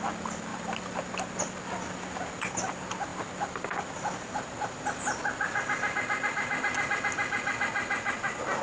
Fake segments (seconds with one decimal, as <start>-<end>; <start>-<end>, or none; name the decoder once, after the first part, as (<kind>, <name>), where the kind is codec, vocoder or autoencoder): 0.5-1.0 (vocoder, BigVGAN v2)